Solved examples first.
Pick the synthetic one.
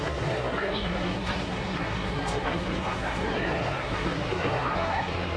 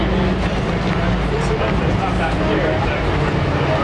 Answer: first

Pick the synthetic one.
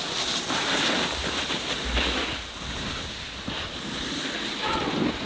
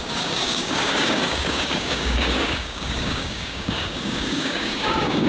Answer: second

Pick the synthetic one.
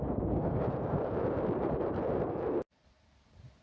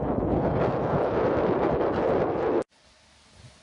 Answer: first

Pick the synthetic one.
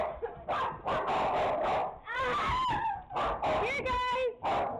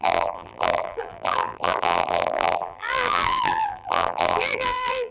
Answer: second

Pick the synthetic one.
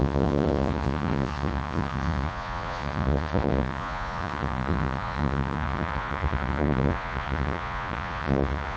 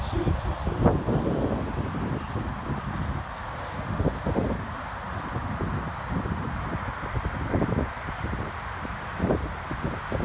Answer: first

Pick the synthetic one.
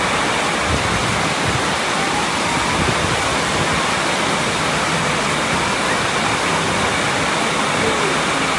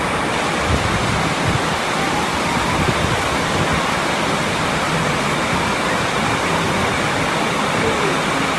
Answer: second